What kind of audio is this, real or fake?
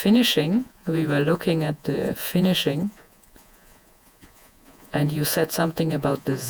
fake